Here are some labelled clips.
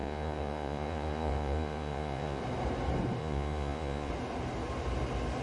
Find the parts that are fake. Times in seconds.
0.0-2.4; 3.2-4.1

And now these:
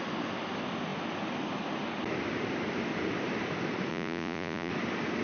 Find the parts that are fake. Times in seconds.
3.9-4.7